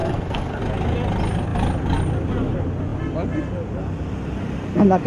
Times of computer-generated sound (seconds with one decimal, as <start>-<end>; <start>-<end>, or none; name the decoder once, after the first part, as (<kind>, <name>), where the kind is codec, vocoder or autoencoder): 0.0-0.6 (codec, SNAC)